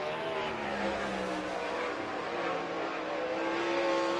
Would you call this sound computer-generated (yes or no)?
no